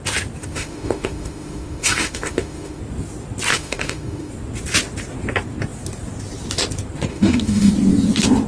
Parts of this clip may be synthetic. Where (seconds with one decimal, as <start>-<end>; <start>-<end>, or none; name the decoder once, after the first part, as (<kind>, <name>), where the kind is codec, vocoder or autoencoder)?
0.4-2.8 (autoencoder, DAC-VAE); 3.5-4.3; 7.1-7.7